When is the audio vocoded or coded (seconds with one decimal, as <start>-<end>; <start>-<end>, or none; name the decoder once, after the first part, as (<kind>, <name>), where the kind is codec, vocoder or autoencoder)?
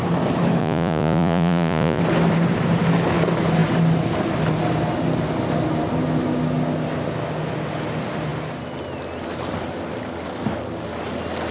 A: 0.6-2.0 (vocoder, Vocos)